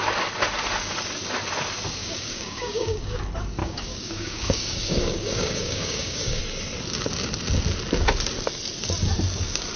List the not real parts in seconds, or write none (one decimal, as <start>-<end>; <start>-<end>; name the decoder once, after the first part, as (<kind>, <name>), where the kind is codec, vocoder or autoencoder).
2.0-3.2 (codec, DAC); 3.6-6.4

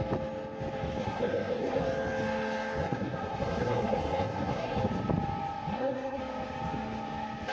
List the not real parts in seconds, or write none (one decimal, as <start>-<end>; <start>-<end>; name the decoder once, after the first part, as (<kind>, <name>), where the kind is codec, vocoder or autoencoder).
1.0-1.8 (codec, SNAC); 2.8-4.8; 5.7-6.2

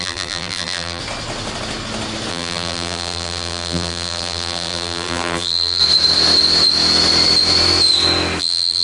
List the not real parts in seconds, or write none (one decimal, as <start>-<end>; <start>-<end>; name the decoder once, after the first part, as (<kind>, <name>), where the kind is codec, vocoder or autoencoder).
0.0-1.0 (vocoder, BigVGAN v2); 2.3-5.8; 8.4-8.8

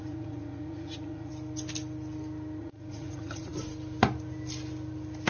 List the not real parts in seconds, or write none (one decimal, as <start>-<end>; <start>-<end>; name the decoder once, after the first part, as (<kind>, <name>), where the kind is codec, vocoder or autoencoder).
0.0-1.3 (vocoder, Vocos); 2.6-3.5

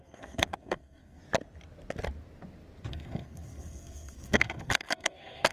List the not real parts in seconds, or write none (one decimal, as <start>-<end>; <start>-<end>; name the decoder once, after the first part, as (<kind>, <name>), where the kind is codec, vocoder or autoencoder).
0.0-1.2 (codec, SNAC); 2.9-5.5